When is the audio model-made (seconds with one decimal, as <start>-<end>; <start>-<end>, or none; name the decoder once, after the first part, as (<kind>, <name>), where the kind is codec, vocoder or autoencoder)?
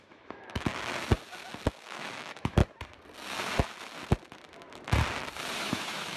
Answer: 0.0-0.7 (autoencoder, DAC-VAE); 1.7-2.6; 5.6-6.2